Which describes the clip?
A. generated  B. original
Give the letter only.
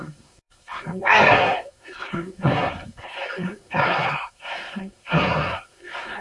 A